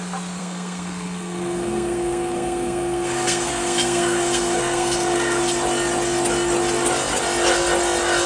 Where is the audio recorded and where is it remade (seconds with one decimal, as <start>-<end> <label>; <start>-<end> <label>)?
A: 0.0-0.4 recorded; 0.4-5.4 remade; 5.4-8.3 recorded